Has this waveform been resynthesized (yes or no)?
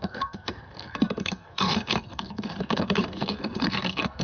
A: yes